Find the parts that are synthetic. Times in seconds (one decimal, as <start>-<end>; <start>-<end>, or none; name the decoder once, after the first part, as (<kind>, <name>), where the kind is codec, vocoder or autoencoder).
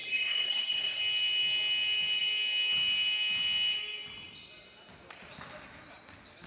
0.0-1.0 (codec, SNAC)